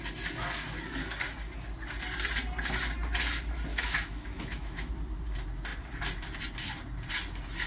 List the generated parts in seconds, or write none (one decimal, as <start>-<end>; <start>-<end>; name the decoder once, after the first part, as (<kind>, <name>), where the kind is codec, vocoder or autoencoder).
3.7-4.9 (autoencoder, DAC-VAE)